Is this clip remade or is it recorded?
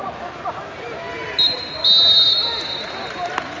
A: recorded